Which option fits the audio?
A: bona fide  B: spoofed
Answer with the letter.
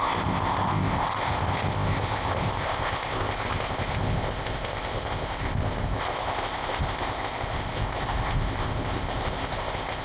B